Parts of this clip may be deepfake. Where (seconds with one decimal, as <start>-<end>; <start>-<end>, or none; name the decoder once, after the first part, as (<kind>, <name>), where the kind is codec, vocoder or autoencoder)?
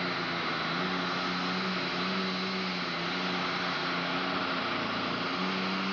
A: none